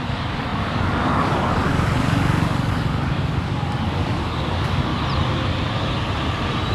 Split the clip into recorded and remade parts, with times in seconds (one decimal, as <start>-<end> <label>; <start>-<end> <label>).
0.0-4.9 remade; 4.9-6.7 recorded